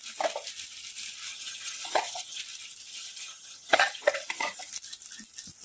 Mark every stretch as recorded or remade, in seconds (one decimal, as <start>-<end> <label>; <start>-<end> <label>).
0.0-1.3 recorded; 1.3-2.4 remade; 2.4-2.9 recorded; 2.9-4.6 remade; 4.6-5.6 recorded